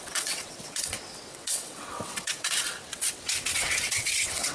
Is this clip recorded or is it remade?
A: remade